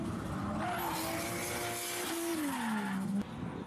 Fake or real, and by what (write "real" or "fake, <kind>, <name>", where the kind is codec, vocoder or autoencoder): real